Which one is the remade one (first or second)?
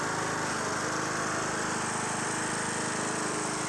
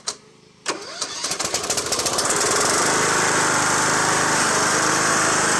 second